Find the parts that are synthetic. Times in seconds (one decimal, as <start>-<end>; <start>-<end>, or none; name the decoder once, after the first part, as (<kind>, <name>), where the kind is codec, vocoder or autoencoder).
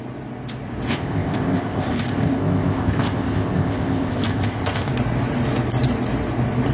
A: 0.9-4.9 (codec, ZipCodec)